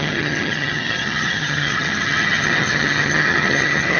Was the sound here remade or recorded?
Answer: remade